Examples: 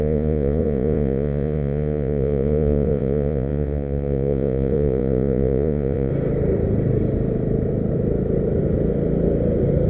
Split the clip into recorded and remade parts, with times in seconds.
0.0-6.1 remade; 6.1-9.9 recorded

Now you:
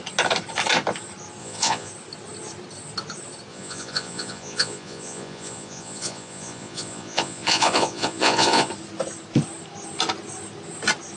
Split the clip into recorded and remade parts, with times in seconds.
0.0-1.4 recorded; 1.4-1.9 remade; 1.9-3.5 recorded; 3.5-8.7 remade; 8.7-11.2 recorded

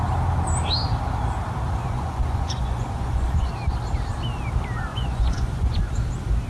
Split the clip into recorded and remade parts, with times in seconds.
0.0-1.8 recorded; 1.8-3.5 remade; 3.5-4.9 recorded; 4.9-5.8 remade; 5.8-6.5 recorded

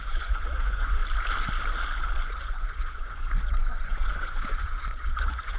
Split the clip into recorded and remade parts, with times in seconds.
0.0-1.0 remade; 1.0-2.2 recorded; 2.2-5.6 remade